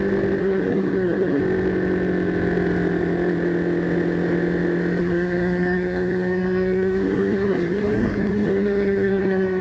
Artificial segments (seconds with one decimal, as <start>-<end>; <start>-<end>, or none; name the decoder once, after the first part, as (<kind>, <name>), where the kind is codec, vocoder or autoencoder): 0.4-1.4 (codec, SNAC); 5.0-9.6